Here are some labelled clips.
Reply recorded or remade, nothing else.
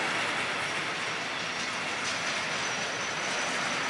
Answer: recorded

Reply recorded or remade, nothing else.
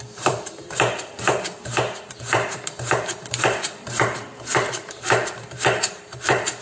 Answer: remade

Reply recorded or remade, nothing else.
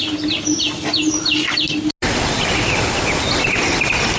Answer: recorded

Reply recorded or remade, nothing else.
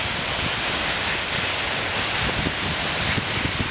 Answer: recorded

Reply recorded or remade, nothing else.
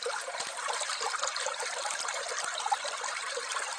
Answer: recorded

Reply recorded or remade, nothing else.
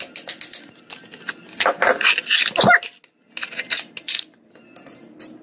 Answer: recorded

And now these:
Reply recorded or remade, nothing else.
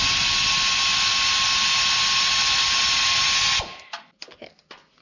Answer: recorded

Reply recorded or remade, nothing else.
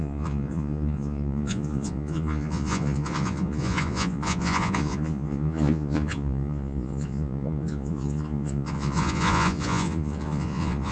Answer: remade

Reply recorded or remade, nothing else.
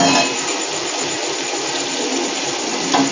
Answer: recorded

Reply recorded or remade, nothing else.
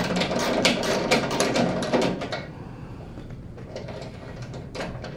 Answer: remade